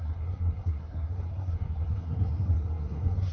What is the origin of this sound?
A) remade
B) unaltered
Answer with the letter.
A